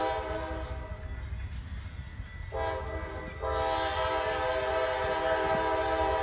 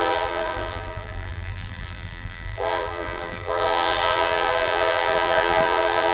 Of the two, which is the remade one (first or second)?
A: second